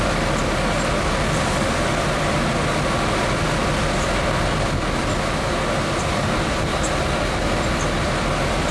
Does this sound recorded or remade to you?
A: recorded